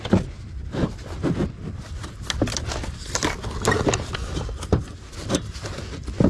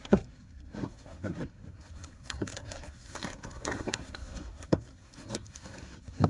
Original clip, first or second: first